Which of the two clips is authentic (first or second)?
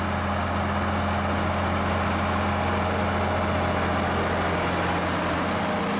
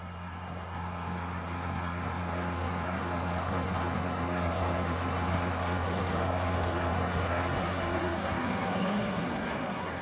first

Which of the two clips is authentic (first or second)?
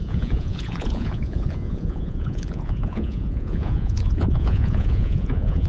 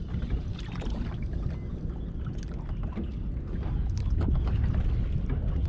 second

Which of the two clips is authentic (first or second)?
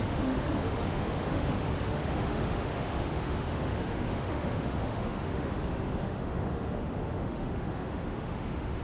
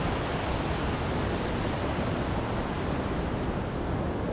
second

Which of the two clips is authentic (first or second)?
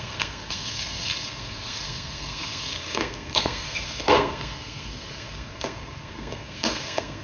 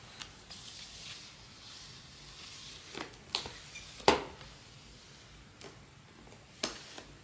second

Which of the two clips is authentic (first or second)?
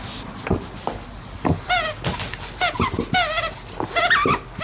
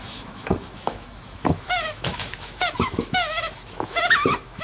first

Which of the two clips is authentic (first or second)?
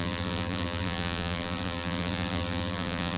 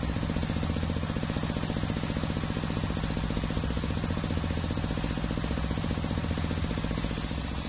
second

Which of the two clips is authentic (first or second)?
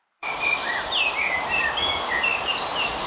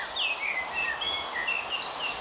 second